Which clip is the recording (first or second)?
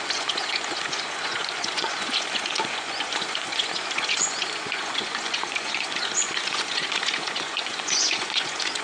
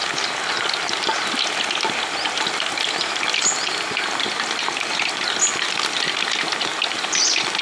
second